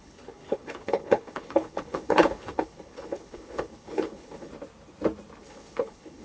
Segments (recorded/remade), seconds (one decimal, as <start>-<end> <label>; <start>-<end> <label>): 0.0-4.5 remade; 4.5-5.4 recorded; 5.4-6.2 remade